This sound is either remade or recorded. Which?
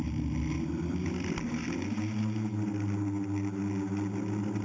recorded